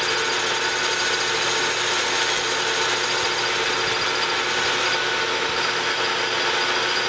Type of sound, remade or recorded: recorded